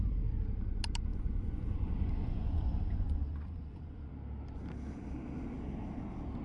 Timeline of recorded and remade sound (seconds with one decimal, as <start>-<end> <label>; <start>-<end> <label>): 0.0-1.1 recorded; 1.1-4.1 remade; 4.1-6.4 recorded

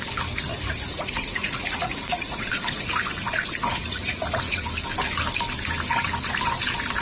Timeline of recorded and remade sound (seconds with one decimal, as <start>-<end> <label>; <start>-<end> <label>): 0.0-0.5 recorded; 0.5-4.7 remade; 4.7-7.0 recorded

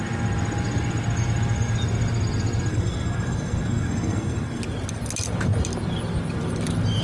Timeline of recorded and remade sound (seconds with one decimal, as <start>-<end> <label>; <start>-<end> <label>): 0.0-2.7 recorded; 2.7-4.6 remade; 4.6-7.0 recorded

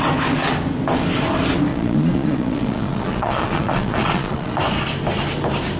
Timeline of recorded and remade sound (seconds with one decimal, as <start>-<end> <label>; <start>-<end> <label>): 0.0-1.7 recorded; 1.7-4.6 remade; 4.6-5.8 recorded

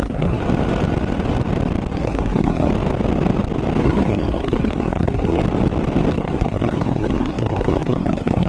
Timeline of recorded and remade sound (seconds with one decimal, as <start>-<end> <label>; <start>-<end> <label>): 0.0-0.4 remade; 0.4-1.9 recorded; 1.9-2.7 remade; 2.7-3.8 recorded; 3.8-5.4 remade; 5.4-6.1 recorded; 6.1-8.5 remade

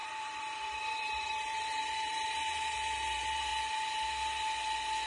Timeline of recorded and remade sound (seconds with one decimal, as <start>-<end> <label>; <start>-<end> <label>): 0.0-3.5 remade; 3.5-5.1 recorded

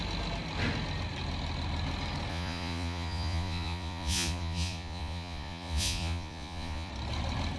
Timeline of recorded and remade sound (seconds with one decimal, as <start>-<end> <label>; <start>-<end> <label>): 0.0-2.3 recorded; 2.3-6.9 remade; 6.9-7.6 recorded

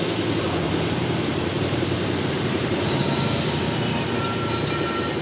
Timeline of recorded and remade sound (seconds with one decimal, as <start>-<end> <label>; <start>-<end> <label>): 0.0-1.3 recorded; 1.3-3.0 remade; 3.0-5.2 recorded